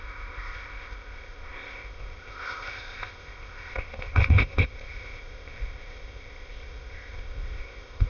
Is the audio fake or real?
fake